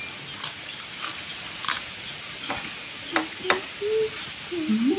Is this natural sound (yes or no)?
yes